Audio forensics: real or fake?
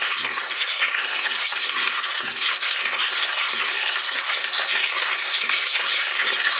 fake